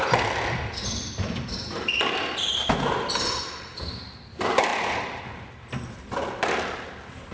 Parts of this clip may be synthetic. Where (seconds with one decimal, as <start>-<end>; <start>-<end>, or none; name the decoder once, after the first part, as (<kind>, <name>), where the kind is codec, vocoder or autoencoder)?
none